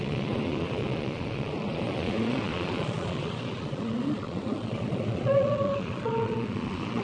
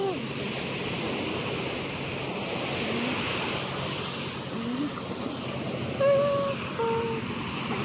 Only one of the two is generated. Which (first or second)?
first